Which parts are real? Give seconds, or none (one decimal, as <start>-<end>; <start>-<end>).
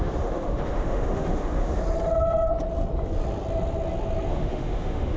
1.8-4.3